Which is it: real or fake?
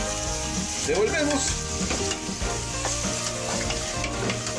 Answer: real